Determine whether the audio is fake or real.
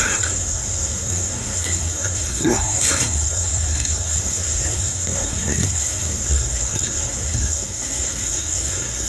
fake